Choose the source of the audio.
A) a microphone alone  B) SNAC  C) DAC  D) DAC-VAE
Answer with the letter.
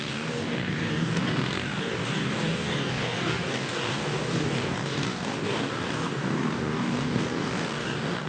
C